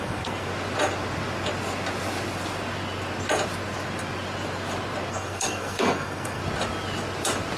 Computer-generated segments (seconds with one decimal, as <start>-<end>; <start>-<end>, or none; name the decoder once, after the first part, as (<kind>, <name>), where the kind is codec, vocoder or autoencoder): 0.0-0.5 (codec, SNAC); 5.1-6.4

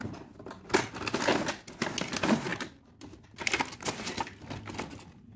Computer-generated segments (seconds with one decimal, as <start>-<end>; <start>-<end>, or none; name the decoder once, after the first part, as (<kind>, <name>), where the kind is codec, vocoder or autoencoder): 2.5-3.4 (vocoder, BigVGAN v2)

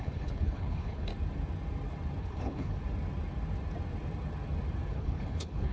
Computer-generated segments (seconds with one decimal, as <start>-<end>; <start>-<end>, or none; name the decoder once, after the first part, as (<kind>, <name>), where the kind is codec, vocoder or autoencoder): 0.0-1.1 (codec, HILCodec); 2.2-2.8; 4.9-5.7

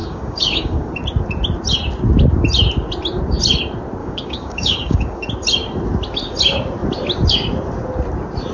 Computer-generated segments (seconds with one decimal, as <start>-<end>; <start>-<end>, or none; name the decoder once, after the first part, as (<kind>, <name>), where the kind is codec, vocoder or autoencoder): 0.0-0.9 (codec, DAC); 4.0-5.3

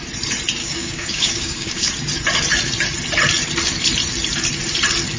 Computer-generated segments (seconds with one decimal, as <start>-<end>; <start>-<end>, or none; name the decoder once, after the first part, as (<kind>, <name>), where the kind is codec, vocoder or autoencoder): 0.6-1.9 (codec, DAC)

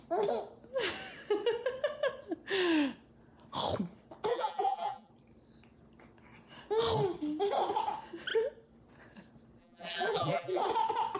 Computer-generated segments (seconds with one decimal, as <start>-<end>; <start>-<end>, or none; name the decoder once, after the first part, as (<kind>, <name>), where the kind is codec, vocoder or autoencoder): 4.3-5.1 (vocoder, BigVGAN v2); 9.6-10.6

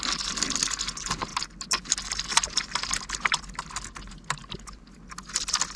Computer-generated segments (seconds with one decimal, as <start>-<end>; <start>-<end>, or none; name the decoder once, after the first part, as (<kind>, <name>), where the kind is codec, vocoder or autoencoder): none